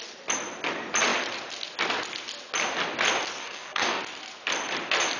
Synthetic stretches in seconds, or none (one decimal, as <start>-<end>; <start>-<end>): 3.4-4.0